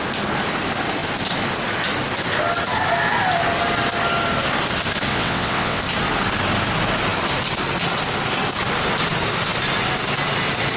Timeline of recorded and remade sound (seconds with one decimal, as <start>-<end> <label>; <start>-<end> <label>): 0.0-5.1 recorded; 5.1-5.8 remade; 5.8-10.8 recorded